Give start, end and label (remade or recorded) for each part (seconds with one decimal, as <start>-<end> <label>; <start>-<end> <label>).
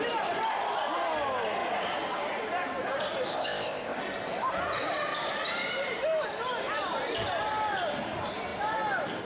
0.0-3.3 recorded; 3.3-4.0 remade; 4.0-9.2 recorded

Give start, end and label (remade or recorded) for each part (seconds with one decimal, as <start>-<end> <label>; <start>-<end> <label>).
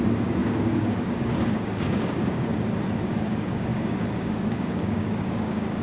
0.0-2.5 remade; 2.5-3.1 recorded; 3.1-5.8 remade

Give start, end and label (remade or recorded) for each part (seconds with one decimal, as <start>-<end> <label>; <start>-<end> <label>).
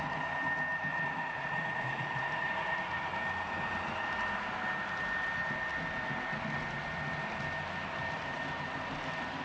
0.0-0.9 recorded; 0.9-3.0 remade; 3.0-9.4 recorded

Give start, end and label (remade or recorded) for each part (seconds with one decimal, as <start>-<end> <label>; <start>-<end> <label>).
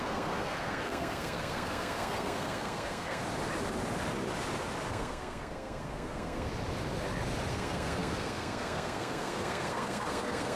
0.0-3.2 remade; 3.2-4.9 recorded; 4.9-6.5 remade; 6.5-7.5 recorded; 7.5-10.6 remade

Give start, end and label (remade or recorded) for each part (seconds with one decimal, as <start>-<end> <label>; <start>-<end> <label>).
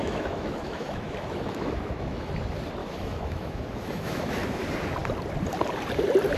0.0-2.3 remade; 2.3-2.8 recorded; 2.8-4.6 remade; 4.6-6.4 recorded